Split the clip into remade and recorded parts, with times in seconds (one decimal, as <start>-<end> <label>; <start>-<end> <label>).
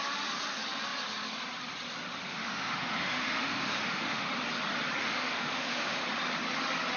0.0-2.3 recorded; 2.3-4.3 remade; 4.3-5.0 recorded; 5.0-6.0 remade; 6.0-7.0 recorded